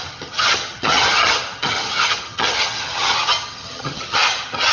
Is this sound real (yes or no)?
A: no